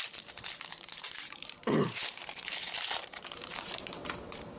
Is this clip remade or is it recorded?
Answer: remade